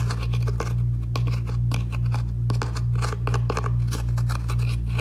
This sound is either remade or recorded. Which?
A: recorded